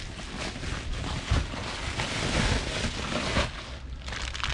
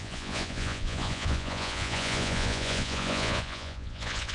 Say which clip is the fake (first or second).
second